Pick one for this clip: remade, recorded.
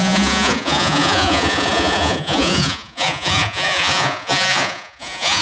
remade